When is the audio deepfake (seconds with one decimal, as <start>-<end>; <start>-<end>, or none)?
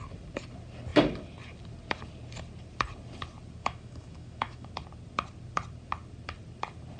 3.6-4.7